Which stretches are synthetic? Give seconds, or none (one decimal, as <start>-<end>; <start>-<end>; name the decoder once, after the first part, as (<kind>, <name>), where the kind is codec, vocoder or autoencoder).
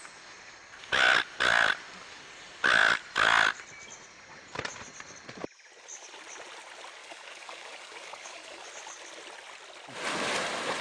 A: 7.0-8.7 (codec, DAC)